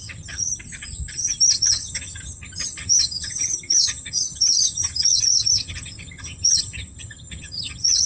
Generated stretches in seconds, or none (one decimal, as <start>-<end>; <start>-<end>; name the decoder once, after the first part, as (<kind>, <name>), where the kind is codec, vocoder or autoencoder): 0.0-0.5 (vocoder, HiFi-GAN); 1.5-8.1

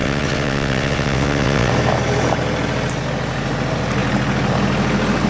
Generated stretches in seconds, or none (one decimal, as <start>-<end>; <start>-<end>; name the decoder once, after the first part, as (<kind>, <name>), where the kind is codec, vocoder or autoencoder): 0.0-1.7 (vocoder, WaveNeXt)

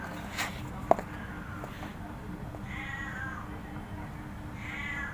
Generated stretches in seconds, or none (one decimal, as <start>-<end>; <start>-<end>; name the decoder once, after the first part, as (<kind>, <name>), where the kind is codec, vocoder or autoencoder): none

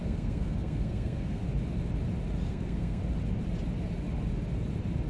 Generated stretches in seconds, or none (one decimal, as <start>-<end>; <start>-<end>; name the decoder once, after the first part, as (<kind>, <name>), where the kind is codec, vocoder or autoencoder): 0.0-1.4 (codec, SNAC); 2.5-3.0